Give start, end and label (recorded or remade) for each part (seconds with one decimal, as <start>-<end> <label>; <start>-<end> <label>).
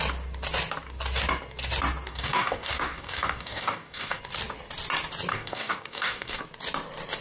0.0-2.1 recorded; 2.1-4.2 remade; 4.2-5.3 recorded; 5.3-6.4 remade; 6.4-7.2 recorded